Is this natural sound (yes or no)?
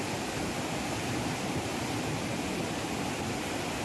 yes